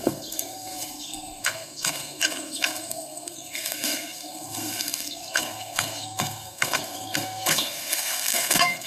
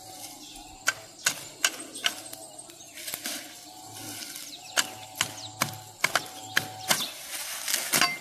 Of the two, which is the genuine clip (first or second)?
second